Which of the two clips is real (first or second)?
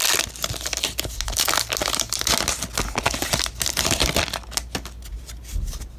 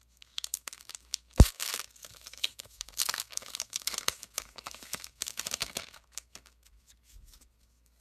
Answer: first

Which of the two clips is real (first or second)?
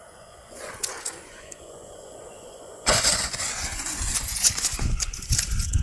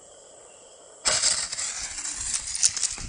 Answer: second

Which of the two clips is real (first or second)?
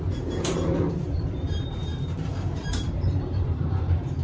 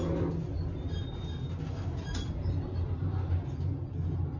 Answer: second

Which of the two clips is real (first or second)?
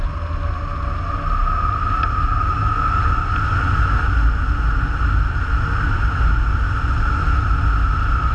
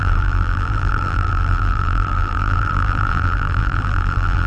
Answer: first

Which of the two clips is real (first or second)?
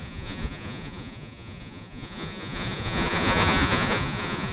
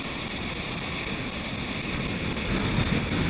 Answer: second